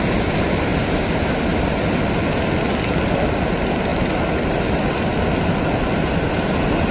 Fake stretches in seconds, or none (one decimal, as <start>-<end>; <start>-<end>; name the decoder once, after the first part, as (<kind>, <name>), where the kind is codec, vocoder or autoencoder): none